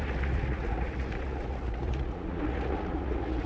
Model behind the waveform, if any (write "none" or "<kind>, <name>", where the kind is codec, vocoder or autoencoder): vocoder, Vocos